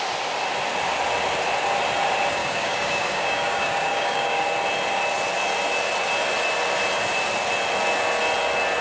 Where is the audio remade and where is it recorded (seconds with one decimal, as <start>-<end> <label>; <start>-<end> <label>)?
0.0-2.4 recorded; 2.4-4.4 remade; 4.4-8.8 recorded

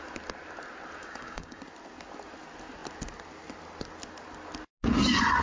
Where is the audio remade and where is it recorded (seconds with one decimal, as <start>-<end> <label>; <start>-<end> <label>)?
0.0-1.0 recorded; 1.0-1.6 remade; 1.6-5.4 recorded

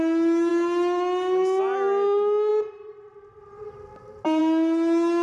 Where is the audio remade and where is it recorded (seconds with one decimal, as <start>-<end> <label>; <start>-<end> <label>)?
0.0-5.2 recorded

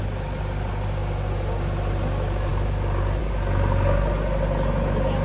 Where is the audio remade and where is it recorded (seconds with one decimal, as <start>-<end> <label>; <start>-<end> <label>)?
0.0-5.2 recorded

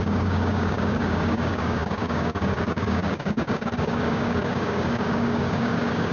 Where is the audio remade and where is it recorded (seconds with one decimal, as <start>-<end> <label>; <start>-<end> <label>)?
0.0-6.1 remade

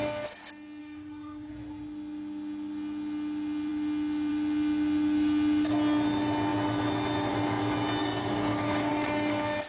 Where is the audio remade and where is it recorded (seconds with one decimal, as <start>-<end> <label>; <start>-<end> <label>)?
0.0-0.8 recorded; 0.8-1.5 remade; 1.5-8.0 recorded; 8.0-8.9 remade; 8.9-9.7 recorded

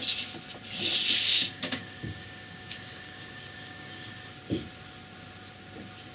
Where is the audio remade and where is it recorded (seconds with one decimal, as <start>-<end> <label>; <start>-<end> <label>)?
0.0-1.3 recorded; 1.3-4.1 remade; 4.1-6.1 recorded